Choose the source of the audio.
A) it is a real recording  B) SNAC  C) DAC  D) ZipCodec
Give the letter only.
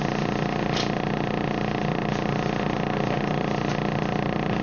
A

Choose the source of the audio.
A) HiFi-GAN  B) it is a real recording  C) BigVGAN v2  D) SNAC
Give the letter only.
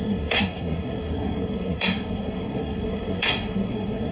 D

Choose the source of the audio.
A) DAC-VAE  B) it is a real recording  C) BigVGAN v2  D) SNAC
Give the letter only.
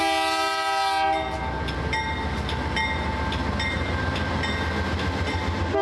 B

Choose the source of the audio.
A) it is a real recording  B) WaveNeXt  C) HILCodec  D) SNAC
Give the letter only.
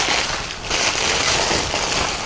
A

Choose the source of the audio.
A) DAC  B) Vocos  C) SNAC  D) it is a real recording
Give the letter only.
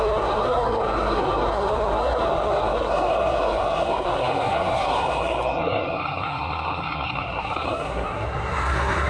C